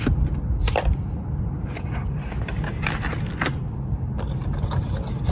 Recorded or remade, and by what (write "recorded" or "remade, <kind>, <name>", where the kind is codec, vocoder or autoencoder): recorded